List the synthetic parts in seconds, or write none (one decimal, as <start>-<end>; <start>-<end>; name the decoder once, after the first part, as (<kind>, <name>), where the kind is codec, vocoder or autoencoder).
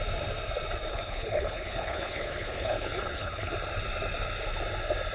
0.9-3.5 (codec, HILCodec)